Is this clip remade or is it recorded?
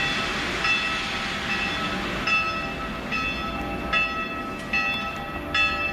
recorded